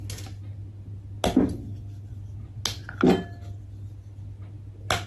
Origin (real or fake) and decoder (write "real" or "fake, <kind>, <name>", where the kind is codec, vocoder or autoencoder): real